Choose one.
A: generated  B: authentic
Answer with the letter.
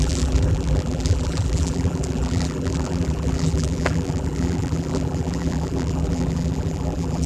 A